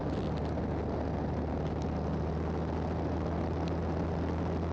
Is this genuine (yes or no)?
yes